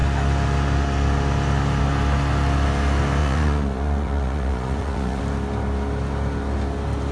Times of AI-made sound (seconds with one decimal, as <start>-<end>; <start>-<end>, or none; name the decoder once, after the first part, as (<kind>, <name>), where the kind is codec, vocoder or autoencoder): 3.2-5.2 (vocoder, Vocos)